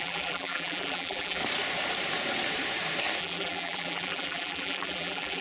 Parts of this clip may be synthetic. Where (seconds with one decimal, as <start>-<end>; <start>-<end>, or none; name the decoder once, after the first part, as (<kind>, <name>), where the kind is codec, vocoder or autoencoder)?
0.0-1.4 (vocoder, BigVGAN v2); 3.2-5.4